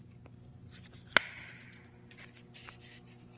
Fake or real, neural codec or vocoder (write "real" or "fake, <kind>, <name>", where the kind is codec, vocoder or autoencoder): real